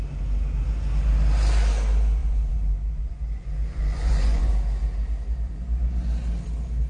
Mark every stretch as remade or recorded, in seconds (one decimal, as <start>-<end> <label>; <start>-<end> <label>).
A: 0.0-2.2 recorded; 2.2-4.5 remade; 4.5-6.9 recorded